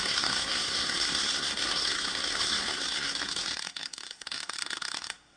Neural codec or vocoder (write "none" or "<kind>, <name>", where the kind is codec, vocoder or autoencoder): codec, SNAC